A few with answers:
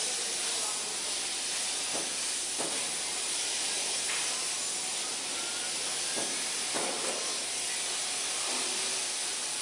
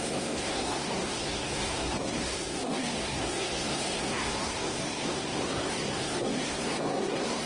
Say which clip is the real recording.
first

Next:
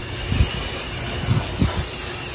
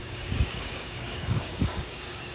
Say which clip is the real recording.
first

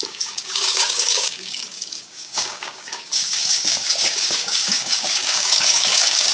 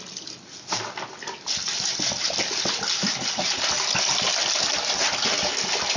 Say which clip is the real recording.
second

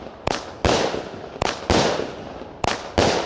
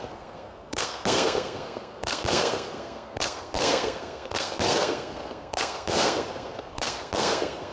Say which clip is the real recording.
first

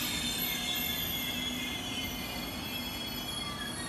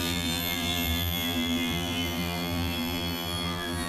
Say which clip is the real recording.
first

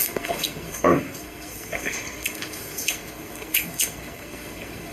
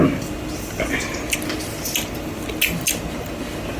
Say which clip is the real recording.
second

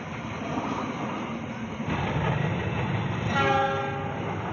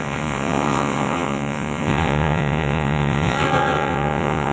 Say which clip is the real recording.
first